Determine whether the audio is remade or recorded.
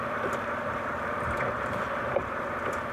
remade